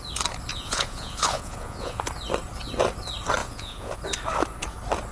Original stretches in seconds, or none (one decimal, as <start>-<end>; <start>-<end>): 0.0-0.5; 2.1-3.4; 4.0-5.1